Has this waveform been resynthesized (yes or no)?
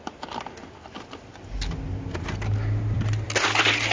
no